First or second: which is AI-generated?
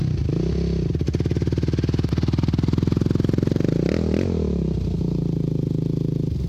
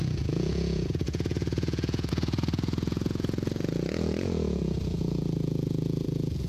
second